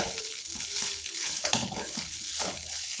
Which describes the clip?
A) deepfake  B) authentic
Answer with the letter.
A